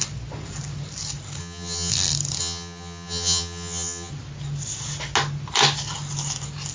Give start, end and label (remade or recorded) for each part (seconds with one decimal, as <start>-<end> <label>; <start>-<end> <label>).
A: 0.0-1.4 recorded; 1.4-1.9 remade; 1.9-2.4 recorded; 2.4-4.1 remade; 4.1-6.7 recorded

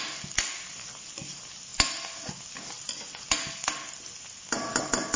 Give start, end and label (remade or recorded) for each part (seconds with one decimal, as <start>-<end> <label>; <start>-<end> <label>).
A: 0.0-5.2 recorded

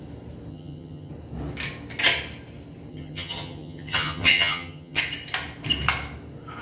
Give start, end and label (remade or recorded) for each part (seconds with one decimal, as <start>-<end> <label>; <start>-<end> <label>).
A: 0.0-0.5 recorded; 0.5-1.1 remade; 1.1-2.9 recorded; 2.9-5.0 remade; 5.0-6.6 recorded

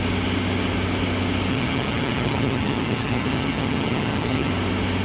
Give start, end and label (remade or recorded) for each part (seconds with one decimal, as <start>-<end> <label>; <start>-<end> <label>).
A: 0.0-1.5 recorded; 1.5-4.5 remade; 4.5-5.0 recorded

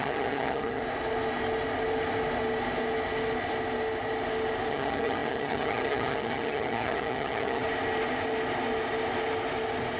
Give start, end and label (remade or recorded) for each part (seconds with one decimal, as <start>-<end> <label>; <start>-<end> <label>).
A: 0.0-0.8 remade; 0.8-4.7 recorded; 4.7-7.6 remade; 7.6-10.0 recorded

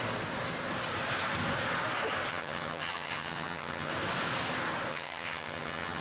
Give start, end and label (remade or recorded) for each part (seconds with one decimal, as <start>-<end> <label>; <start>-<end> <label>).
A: 0.0-2.3 recorded; 2.3-3.9 remade; 3.9-4.9 recorded; 4.9-6.0 remade